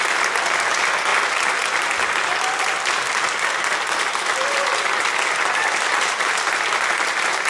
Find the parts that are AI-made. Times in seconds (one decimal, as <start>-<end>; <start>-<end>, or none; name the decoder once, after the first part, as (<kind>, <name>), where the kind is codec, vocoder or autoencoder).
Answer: none